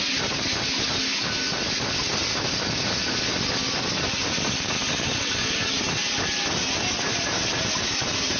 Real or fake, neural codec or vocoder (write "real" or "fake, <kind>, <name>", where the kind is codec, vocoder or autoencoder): real